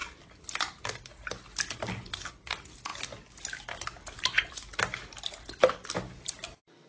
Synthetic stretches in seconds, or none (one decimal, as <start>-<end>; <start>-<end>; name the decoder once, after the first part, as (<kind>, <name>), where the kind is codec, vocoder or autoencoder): none